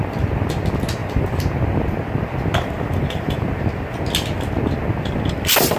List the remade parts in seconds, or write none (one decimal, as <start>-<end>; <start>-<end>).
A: none